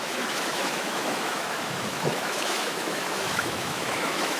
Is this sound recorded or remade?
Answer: remade